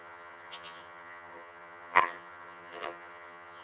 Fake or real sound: fake